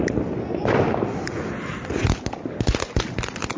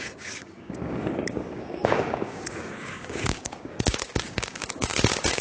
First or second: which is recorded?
first